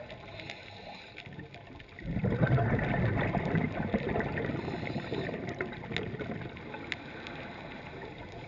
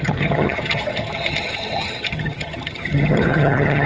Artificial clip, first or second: second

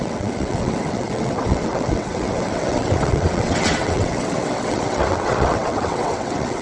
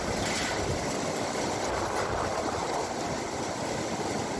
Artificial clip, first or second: first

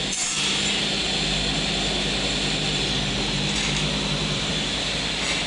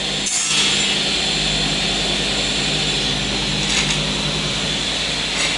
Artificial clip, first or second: first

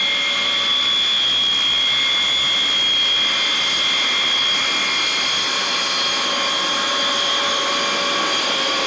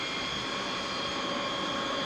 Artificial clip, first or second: second